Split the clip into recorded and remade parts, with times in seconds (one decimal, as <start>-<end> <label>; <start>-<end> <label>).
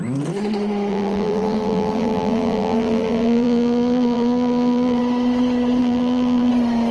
0.0-0.9 recorded; 0.9-5.0 remade; 5.0-5.8 recorded; 5.8-6.5 remade; 6.5-6.9 recorded